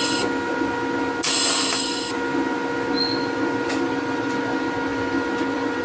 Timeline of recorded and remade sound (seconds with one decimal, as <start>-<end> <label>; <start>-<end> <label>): 0.0-5.8 recorded